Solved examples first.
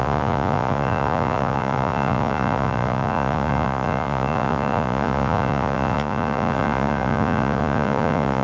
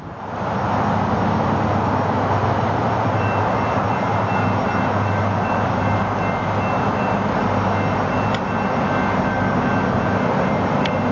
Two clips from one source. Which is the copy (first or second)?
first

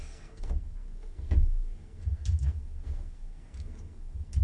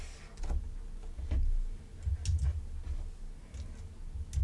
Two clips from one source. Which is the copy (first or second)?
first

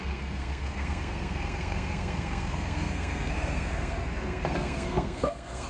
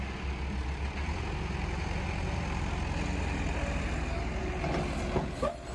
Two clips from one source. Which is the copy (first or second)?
first